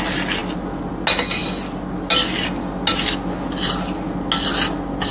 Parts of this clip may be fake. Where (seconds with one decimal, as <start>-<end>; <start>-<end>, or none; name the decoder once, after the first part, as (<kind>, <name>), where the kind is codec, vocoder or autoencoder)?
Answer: none